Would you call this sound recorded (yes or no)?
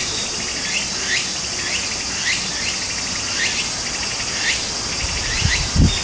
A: yes